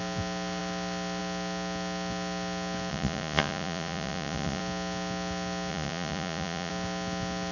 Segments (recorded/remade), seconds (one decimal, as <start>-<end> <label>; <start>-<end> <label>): 0.0-2.9 recorded; 2.9-4.6 remade; 4.6-5.7 recorded; 5.7-6.7 remade; 6.7-7.5 recorded